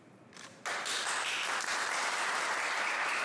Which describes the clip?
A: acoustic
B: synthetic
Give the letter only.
B